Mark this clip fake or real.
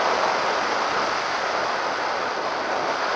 real